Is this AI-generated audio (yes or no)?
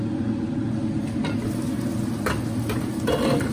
no